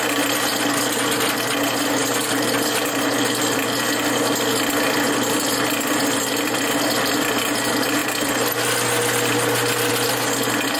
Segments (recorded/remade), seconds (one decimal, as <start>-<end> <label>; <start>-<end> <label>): 0.0-10.8 recorded